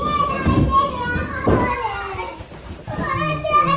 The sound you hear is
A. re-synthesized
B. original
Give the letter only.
B